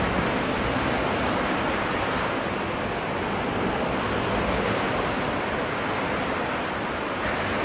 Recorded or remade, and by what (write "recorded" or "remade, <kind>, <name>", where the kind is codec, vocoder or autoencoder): recorded